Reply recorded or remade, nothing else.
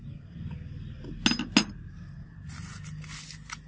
recorded